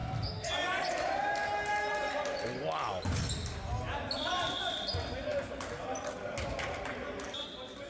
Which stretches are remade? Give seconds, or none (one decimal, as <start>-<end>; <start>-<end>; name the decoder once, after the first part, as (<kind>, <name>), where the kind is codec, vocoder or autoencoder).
none